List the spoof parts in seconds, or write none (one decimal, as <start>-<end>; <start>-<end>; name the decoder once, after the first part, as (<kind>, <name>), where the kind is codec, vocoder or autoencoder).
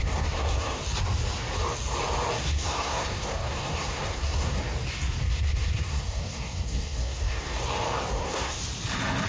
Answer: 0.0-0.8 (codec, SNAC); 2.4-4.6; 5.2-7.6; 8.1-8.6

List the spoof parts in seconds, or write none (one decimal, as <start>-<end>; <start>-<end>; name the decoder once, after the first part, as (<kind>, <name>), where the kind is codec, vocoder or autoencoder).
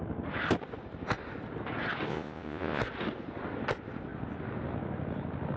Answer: 2.1-2.8 (vocoder, Vocos)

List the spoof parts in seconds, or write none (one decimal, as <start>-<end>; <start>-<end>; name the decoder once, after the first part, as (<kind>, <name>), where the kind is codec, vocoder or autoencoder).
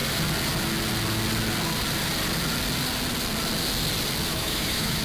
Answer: 4.3-5.0 (autoencoder, DAC-VAE)